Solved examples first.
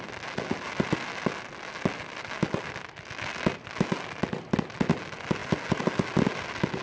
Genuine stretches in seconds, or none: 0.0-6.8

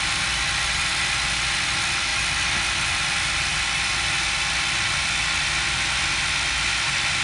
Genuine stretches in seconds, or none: 0.0-7.2